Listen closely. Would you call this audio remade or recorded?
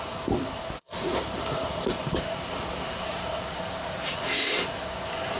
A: recorded